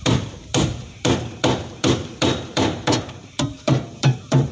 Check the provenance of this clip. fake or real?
fake